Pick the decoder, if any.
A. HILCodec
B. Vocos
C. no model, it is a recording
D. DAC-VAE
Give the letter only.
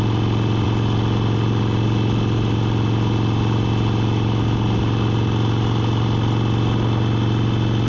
C